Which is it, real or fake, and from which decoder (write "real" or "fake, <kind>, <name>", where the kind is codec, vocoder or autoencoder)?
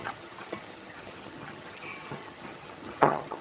fake, vocoder, HiFi-GAN